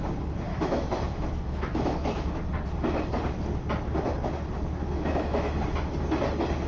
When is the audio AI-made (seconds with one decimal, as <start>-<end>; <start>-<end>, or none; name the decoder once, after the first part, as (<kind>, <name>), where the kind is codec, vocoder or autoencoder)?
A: 0.5-2.4 (autoencoder, DAC-VAE); 4.8-5.5